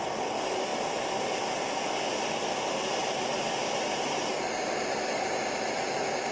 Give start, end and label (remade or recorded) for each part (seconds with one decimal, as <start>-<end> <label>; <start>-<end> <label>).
0.0-6.3 recorded